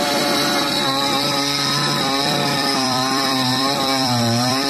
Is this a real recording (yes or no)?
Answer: no